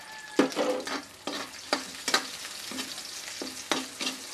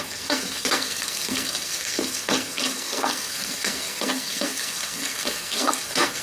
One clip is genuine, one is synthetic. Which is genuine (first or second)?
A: first